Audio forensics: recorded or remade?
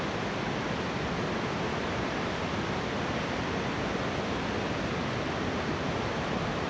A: recorded